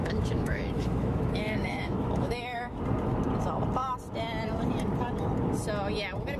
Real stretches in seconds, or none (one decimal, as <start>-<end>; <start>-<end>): 2.8-6.4